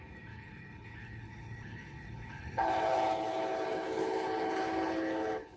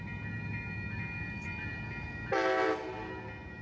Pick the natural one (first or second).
second